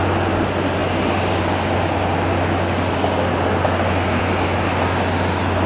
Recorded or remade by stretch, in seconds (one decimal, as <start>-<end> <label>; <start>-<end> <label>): 0.0-5.7 recorded